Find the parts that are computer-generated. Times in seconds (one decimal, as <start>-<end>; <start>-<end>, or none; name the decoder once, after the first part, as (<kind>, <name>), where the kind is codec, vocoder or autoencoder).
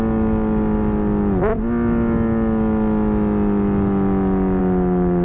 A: none